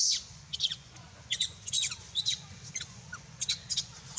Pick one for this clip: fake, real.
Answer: fake